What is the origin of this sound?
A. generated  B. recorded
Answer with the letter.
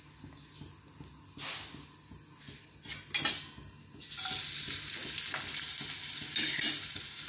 B